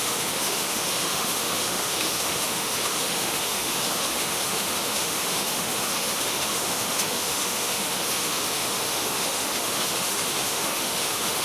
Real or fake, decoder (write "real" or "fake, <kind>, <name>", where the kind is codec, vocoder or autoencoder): fake, autoencoder, DAC-VAE